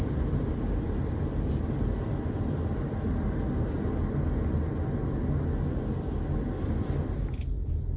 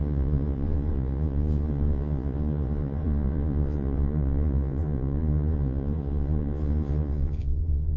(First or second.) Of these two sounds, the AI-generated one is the second